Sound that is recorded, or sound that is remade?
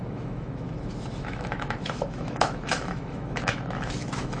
remade